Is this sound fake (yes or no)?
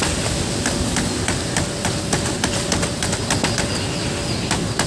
no